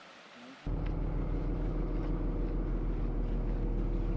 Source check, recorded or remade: recorded